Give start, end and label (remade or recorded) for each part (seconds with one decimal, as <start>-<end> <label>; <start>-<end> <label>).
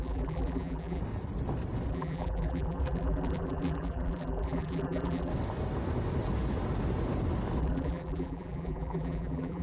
0.0-1.0 remade; 1.0-1.9 recorded; 1.9-5.3 remade; 5.3-7.6 recorded; 7.6-9.6 remade